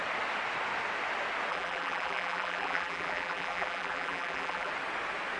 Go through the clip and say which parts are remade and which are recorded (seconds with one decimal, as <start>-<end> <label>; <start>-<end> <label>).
0.0-1.5 recorded; 1.5-4.7 remade; 4.7-5.4 recorded